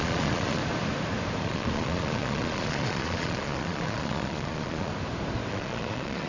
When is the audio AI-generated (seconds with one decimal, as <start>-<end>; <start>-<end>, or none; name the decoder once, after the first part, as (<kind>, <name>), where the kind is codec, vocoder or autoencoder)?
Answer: 0.0-0.6 (vocoder, Vocos); 1.4-4.9; 5.5-6.3